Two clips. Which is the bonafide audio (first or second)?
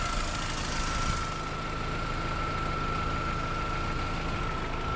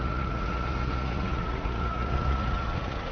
first